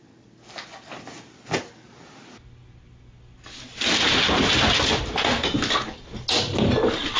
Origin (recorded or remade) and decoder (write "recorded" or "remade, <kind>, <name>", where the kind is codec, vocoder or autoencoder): recorded